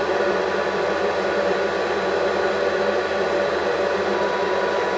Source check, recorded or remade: recorded